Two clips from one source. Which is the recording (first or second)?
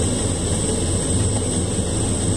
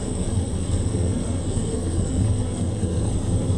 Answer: first